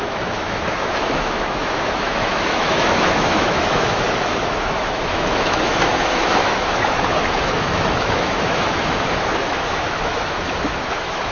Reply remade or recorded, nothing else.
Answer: remade